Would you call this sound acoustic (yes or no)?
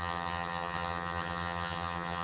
no